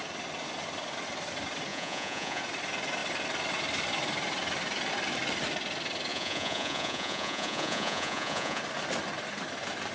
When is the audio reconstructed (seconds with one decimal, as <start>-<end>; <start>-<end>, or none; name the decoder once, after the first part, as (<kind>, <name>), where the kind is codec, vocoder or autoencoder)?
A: 1.7-2.4 (vocoder, Vocos); 6.1-8.6